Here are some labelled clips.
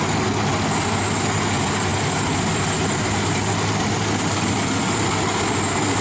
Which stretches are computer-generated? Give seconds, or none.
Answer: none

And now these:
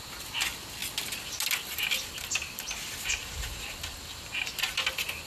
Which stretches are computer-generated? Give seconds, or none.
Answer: none

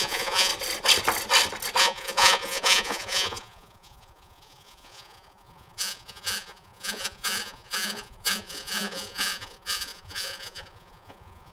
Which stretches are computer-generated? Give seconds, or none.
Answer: 0.0-0.5; 1.8-11.5